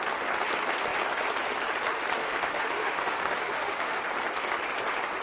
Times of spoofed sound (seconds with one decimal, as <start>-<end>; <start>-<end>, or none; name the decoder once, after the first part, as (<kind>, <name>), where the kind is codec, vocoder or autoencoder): 2.2-4.1 (autoencoder, DAC-VAE)